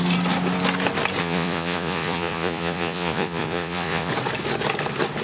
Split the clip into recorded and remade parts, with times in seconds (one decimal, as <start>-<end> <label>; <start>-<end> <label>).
0.0-1.2 recorded; 1.2-4.1 remade; 4.1-5.2 recorded